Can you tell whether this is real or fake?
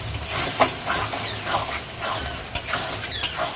real